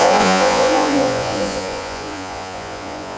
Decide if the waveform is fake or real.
fake